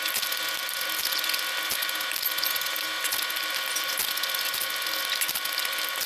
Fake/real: real